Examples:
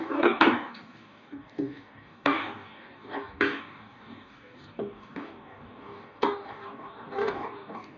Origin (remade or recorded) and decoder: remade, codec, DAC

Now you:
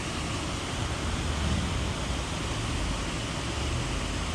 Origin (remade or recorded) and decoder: recorded